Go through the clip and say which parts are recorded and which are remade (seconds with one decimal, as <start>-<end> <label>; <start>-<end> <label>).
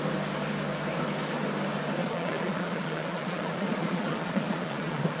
0.0-2.0 recorded; 2.0-5.2 remade